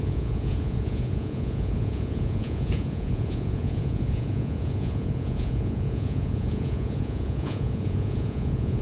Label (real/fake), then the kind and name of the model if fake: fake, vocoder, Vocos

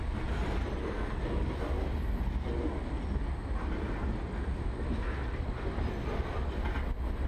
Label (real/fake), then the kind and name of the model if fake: real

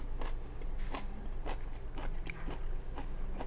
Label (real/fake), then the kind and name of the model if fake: real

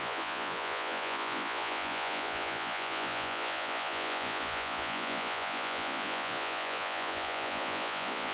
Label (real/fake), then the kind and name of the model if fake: fake, vocoder, Vocos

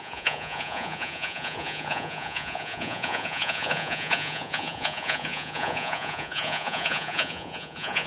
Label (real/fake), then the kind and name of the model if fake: fake, vocoder, Vocos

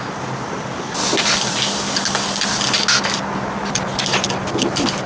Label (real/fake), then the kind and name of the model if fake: real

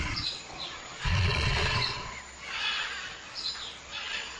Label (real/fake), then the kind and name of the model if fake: fake, vocoder, Vocos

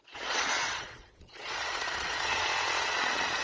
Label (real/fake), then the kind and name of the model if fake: fake, vocoder, Vocos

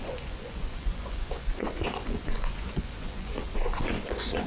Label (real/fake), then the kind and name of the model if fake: fake, vocoder, Vocos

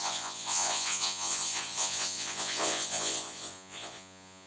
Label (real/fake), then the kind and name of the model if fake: fake, vocoder, Vocos